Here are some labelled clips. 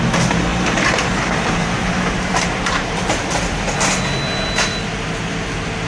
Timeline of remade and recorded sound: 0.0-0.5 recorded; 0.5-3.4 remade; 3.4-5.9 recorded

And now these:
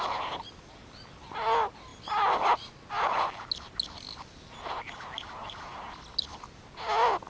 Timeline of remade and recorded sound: 0.0-7.3 recorded